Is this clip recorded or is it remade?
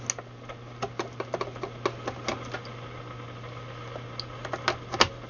recorded